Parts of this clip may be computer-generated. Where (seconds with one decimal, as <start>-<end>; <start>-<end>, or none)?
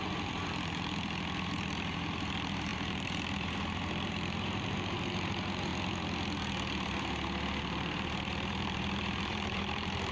0.0-5.7; 7.6-10.1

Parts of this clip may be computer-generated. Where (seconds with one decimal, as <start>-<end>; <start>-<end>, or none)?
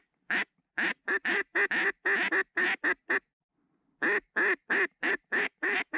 0.0-1.5; 5.1-6.0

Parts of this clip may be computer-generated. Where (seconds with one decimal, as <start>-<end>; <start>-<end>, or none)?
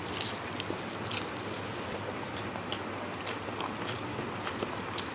0.0-2.7